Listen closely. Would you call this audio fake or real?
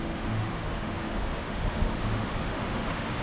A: fake